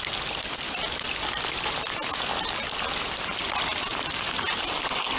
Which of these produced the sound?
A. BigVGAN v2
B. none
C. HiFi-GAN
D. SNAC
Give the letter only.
B